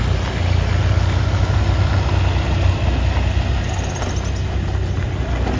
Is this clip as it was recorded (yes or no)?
yes